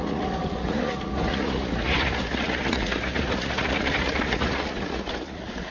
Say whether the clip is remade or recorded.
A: remade